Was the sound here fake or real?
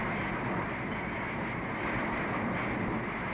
real